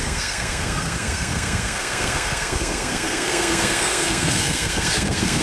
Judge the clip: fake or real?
fake